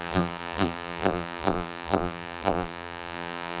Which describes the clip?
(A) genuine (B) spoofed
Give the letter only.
B